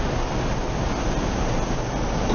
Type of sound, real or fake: real